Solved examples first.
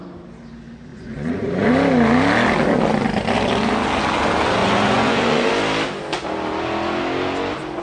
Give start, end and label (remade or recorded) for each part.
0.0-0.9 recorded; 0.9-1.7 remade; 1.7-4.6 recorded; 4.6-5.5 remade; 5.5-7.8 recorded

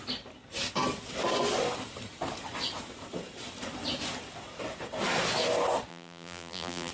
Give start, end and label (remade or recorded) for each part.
0.0-5.9 recorded; 5.9-6.9 remade

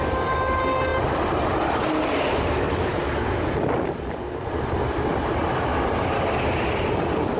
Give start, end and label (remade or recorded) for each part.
0.0-7.4 recorded